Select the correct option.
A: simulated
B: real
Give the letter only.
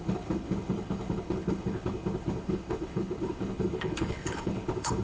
A